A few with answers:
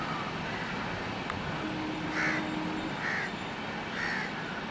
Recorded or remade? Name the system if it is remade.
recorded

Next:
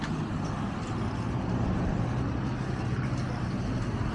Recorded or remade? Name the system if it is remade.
recorded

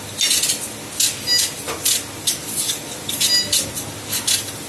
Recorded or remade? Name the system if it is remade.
recorded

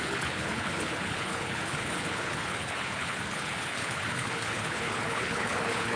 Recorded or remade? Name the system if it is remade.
remade, codec, HILCodec